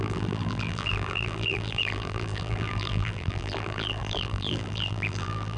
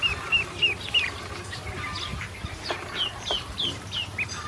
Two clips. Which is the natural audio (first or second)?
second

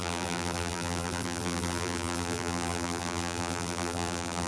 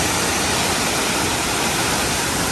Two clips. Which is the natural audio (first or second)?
second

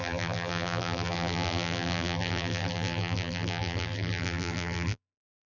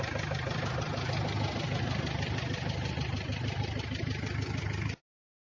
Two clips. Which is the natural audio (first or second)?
second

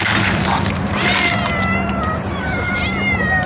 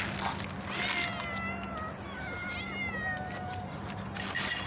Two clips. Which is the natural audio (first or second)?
second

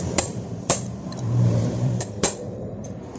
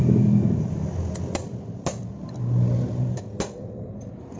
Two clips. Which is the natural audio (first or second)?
second